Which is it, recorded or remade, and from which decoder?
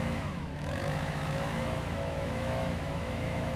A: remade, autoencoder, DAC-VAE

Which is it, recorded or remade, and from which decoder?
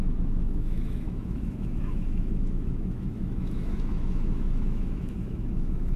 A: remade, autoencoder, DAC-VAE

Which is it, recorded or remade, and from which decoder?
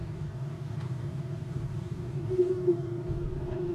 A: remade, codec, DAC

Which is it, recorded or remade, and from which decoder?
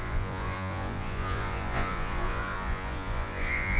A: remade, vocoder, Vocos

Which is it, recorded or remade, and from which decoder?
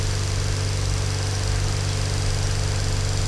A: recorded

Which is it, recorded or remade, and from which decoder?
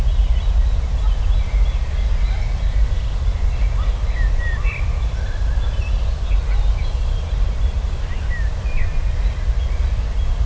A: recorded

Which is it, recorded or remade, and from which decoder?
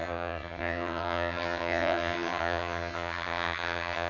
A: remade, vocoder, HiFi-GAN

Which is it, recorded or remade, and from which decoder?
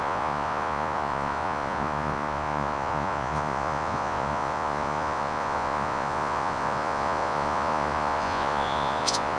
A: remade, vocoder, Vocos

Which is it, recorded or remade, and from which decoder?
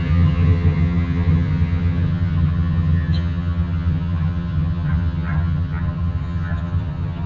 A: remade, vocoder, HiFi-GAN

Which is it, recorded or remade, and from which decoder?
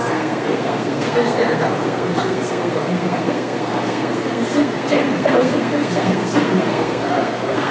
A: remade, codec, SNAC